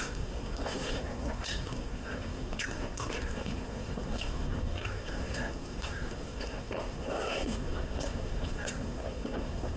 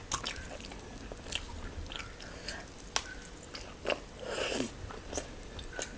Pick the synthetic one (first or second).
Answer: first